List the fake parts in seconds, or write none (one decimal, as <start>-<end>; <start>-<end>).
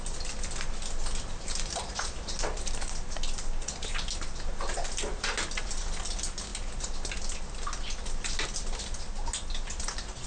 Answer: none